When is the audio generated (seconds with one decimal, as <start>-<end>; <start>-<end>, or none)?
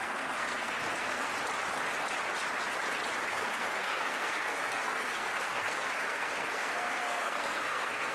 0.0-1.3; 3.3-8.1